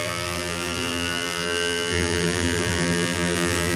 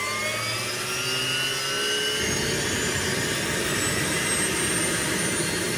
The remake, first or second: first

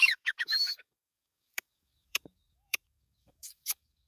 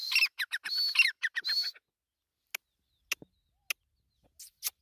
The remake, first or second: first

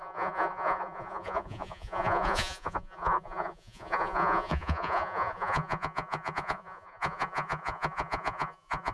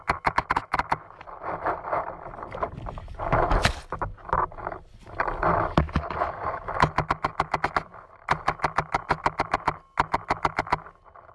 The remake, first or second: first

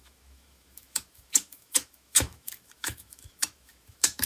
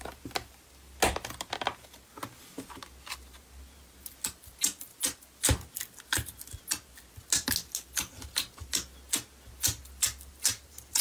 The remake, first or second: first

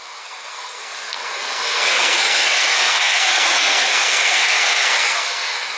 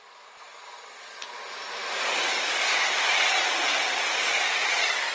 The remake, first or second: first